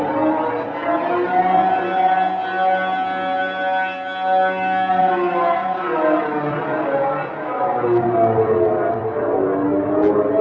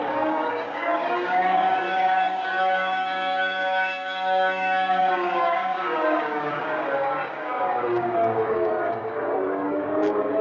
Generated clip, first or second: second